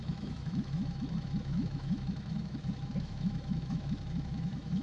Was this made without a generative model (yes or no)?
no